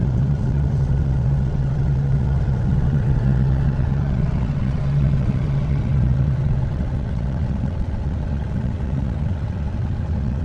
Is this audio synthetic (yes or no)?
yes